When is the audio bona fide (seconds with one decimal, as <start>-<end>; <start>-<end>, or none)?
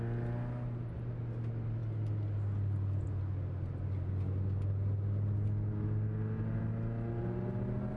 0.0-8.0